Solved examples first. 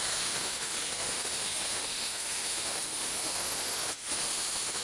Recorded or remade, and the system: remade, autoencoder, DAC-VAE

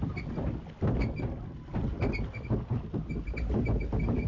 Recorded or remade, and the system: recorded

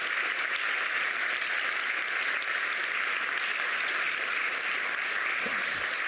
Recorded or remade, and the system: recorded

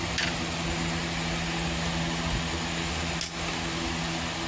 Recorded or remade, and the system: recorded